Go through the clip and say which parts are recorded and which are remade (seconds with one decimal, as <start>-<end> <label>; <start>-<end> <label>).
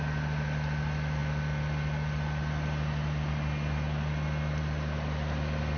0.0-5.8 recorded